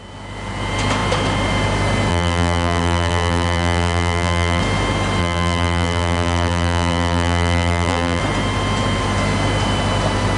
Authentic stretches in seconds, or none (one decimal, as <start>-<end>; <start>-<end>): 0.0-2.1; 4.6-5.2; 8.2-10.4